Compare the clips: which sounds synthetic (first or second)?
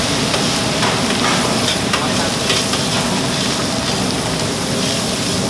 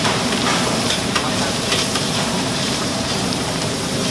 second